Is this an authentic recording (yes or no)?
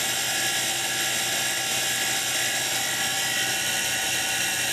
yes